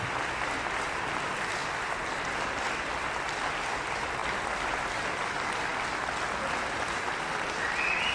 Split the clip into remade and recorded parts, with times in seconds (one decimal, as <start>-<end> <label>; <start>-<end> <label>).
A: 0.0-8.1 recorded